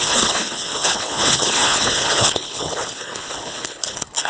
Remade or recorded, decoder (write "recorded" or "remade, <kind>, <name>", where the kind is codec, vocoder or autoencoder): remade, codec, HILCodec